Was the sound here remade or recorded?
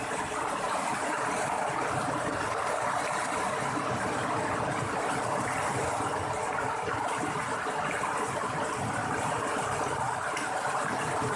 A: recorded